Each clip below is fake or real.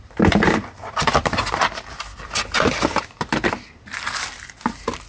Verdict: fake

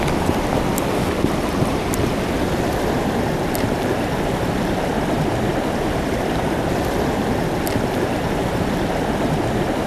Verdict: fake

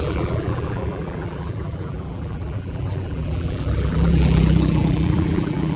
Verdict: fake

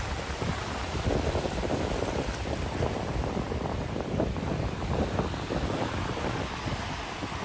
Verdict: fake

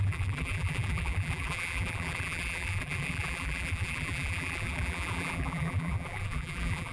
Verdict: fake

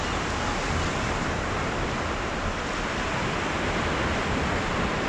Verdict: real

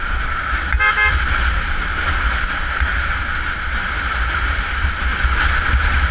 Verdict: real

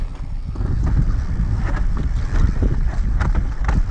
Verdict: real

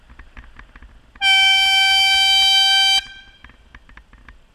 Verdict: real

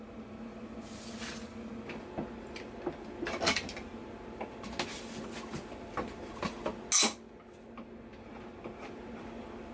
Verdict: real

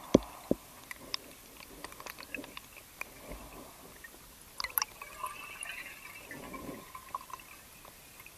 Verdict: real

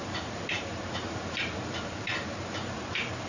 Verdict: fake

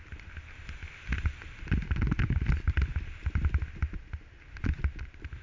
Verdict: real